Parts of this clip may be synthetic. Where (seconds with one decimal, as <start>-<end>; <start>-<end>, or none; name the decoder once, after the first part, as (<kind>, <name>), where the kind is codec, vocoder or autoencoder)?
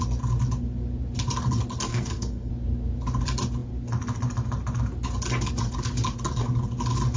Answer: 1.9-2.5 (codec, SNAC)